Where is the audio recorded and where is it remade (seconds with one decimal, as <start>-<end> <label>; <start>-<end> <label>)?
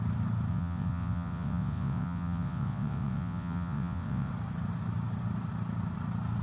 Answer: 0.0-0.5 recorded; 0.5-4.3 remade; 4.3-6.4 recorded